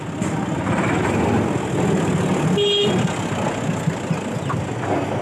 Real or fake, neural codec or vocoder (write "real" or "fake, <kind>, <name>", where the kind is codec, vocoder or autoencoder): real